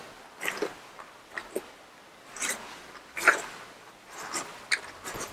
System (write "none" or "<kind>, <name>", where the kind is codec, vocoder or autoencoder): none